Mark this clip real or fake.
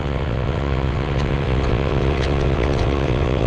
fake